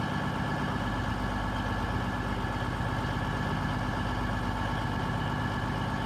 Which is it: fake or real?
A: real